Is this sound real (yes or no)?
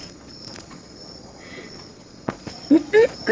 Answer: no